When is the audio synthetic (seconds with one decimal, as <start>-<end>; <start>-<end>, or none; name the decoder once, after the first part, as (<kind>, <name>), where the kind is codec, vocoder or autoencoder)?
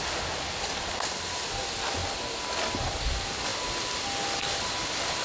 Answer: none